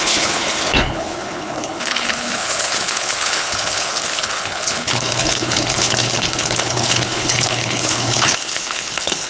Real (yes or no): no